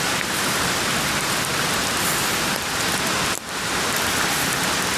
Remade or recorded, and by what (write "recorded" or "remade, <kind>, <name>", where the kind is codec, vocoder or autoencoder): remade, vocoder, BigVGAN v2